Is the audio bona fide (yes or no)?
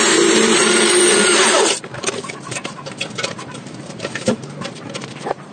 no